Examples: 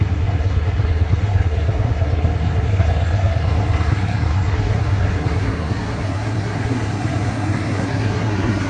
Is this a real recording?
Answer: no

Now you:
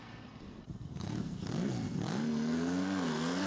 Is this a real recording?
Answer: no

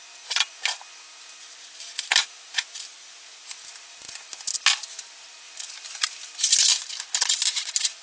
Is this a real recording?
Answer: yes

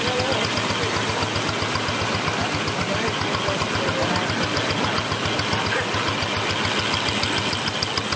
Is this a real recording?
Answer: yes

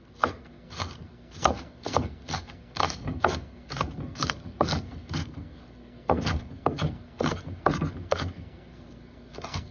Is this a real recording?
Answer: no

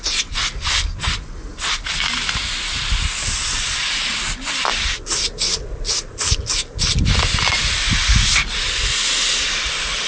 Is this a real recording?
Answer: yes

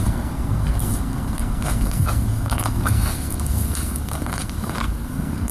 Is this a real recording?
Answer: no